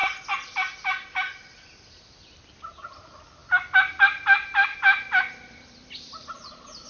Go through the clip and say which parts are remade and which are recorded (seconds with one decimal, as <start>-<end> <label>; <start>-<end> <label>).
0.0-6.9 recorded